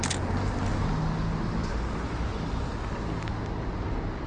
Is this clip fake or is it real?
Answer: real